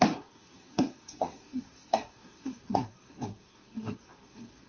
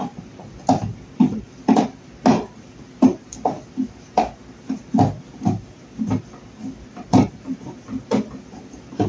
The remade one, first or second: first